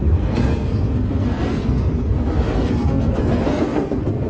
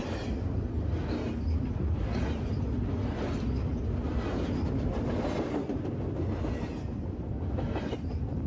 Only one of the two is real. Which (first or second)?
second